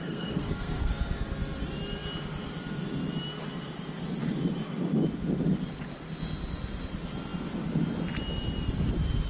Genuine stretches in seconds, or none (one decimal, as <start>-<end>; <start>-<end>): 0.9-9.3